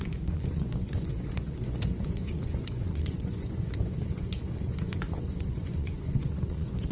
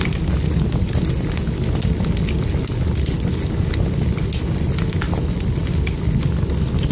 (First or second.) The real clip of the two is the second